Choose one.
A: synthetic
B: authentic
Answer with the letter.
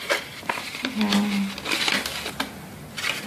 B